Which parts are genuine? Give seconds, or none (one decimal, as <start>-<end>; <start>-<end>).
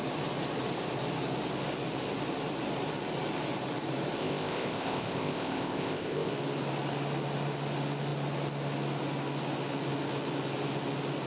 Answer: 0.0-4.2; 6.3-11.3